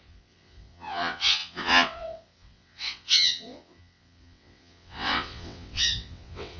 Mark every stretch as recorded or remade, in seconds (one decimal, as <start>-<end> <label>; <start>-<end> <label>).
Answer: 0.0-6.6 remade